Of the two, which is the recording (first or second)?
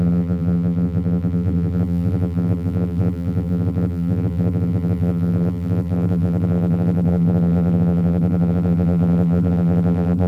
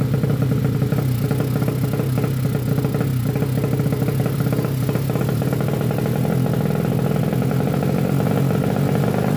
second